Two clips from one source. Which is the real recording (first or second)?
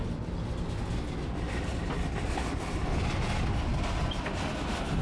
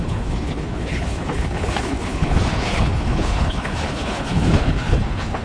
first